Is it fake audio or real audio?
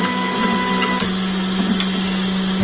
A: real